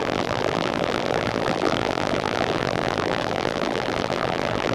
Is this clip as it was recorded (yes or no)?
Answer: no